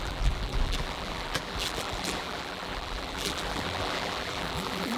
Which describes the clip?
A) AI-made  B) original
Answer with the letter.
A